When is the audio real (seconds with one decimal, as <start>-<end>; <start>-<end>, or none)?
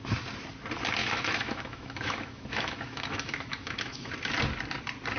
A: 0.0-1.0; 4.1-5.2